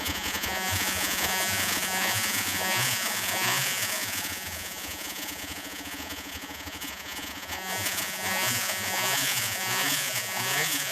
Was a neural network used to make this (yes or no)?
yes